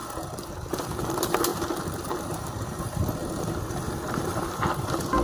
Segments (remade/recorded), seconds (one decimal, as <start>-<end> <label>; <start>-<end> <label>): 0.0-0.5 recorded; 0.5-5.2 remade